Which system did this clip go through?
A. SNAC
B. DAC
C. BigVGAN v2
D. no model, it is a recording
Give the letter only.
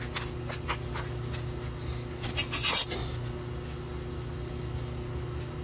D